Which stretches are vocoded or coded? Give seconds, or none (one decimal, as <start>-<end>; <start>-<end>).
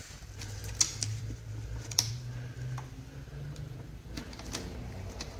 0.6-2.1